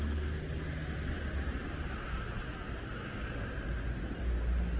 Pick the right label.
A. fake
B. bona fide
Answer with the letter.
B